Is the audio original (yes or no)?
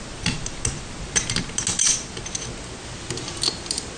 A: yes